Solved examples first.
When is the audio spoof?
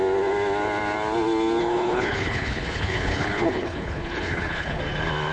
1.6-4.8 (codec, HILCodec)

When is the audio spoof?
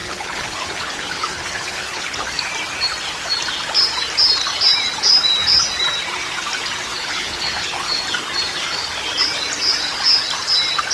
0.0-2.3 (codec, HILCodec); 6.9-8.0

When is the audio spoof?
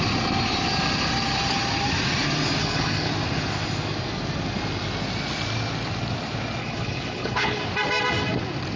2.6-3.1 (codec, HILCodec); 6.6-7.6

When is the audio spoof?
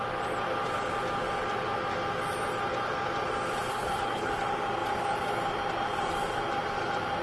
3.7-4.3 (codec, HILCodec)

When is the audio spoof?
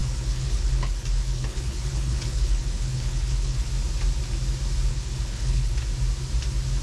0.0-3.7 (codec, HILCodec); 4.9-5.8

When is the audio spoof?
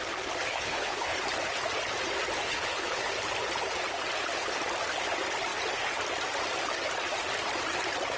0.5-1.2 (codec, HILCodec); 2.4-3.1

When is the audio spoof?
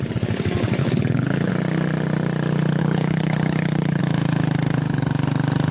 0.8-1.5 (codec, HILCodec); 2.8-4.0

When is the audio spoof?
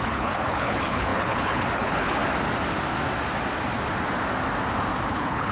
0.0-2.2 (codec, HILCodec); 5.1-5.5